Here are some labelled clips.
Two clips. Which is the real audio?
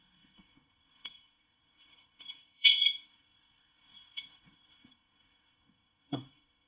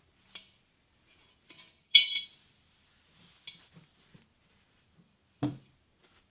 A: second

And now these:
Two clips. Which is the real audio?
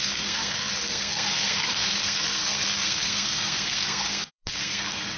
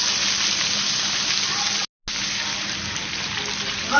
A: second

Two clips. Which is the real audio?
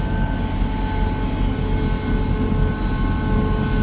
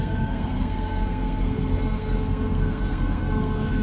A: first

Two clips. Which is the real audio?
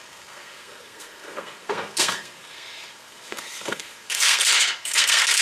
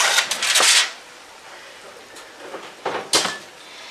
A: second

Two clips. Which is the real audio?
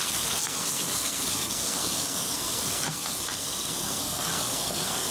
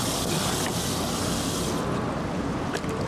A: second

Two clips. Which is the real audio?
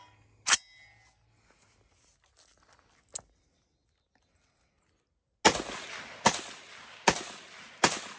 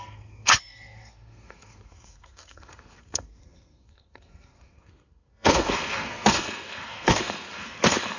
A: first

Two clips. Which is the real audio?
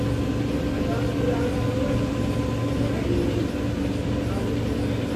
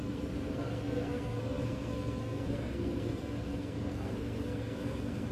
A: first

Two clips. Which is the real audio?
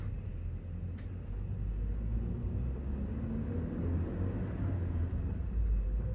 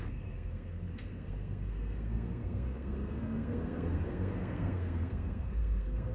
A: first